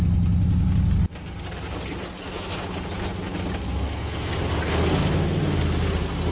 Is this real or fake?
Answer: real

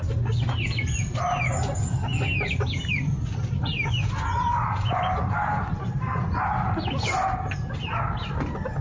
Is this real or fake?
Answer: real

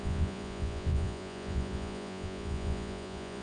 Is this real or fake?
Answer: fake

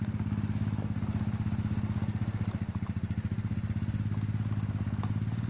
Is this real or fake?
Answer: real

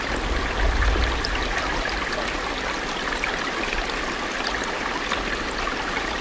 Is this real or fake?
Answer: real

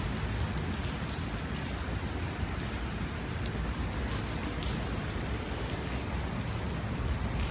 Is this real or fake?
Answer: real